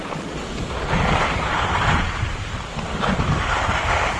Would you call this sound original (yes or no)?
yes